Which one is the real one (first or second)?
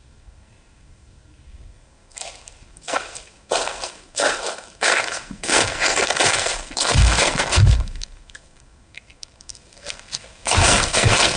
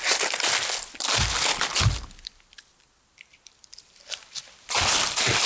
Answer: second